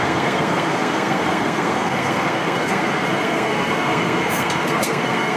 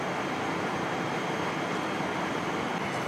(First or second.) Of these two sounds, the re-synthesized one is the first